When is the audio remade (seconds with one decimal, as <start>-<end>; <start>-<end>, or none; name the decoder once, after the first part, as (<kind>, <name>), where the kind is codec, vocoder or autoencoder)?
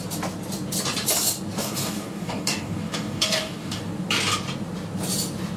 1.6-3.8 (codec, DAC)